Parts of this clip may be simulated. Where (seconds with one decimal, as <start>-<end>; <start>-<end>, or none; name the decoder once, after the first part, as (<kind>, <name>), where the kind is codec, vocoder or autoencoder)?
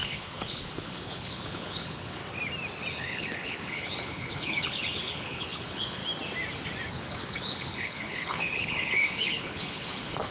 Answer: 0.0-2.2 (codec, HILCodec); 2.9-6.0; 6.9-10.3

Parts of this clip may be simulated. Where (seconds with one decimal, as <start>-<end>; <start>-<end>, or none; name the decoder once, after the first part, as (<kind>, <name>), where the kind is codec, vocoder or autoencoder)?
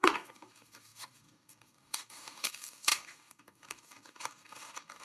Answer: 0.0-5.0 (codec, DAC)